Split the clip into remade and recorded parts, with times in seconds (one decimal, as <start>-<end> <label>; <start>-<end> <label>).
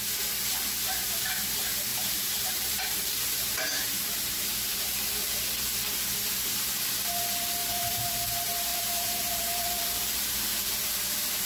0.0-1.9 recorded; 1.9-5.4 remade; 5.4-7.6 recorded; 7.6-8.1 remade; 8.1-8.7 recorded; 8.7-10.4 remade; 10.4-11.5 recorded